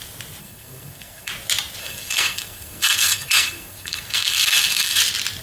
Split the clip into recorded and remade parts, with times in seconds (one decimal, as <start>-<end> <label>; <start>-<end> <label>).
0.0-0.4 recorded; 0.4-1.3 remade; 1.3-1.8 recorded; 1.8-5.0 remade; 5.0-5.4 recorded